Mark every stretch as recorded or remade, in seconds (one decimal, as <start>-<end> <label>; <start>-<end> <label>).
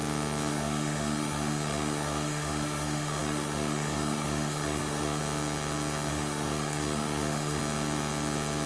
0.0-0.5 recorded; 0.5-5.2 remade; 5.2-6.1 recorded; 6.1-7.6 remade; 7.6-8.7 recorded